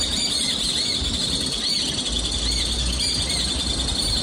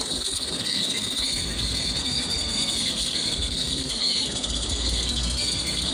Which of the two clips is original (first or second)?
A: first